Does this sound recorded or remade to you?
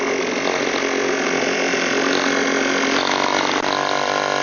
recorded